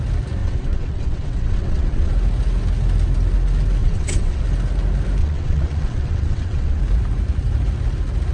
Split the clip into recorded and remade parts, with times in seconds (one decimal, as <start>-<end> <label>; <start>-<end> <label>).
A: 0.0-0.4 recorded; 0.4-2.1 remade; 2.1-3.8 recorded; 3.8-4.4 remade; 4.4-5.2 recorded; 5.2-6.8 remade; 6.8-8.3 recorded